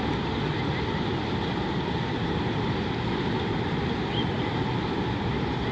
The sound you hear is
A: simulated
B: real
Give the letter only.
B